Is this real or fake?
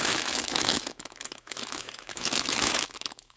fake